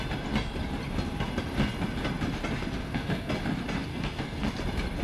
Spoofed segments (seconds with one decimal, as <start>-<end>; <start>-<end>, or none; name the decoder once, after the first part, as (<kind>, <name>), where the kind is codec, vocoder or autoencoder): 2.8-3.3 (codec, SNAC); 3.9-4.5